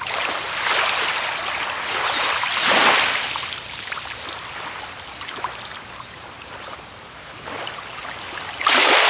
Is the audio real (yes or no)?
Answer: yes